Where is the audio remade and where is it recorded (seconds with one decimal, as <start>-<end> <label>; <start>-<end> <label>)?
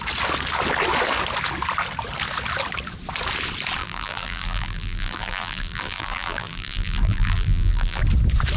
0.0-3.8 recorded; 3.8-8.0 remade; 8.0-8.6 recorded